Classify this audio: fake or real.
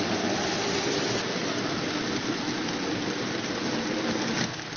fake